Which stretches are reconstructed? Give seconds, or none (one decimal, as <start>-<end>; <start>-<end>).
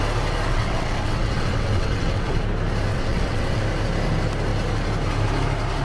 0.5-2.4; 2.9-3.6